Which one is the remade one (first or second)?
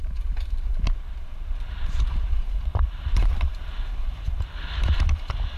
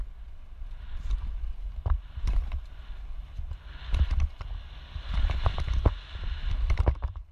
first